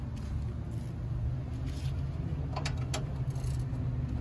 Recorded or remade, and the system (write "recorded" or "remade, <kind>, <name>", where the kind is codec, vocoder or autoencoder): recorded